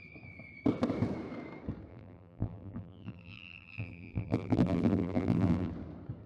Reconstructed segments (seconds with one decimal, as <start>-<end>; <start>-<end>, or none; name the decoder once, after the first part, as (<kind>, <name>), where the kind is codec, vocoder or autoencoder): 1.9-5.7 (vocoder, BigVGAN v2)